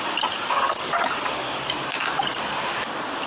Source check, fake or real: real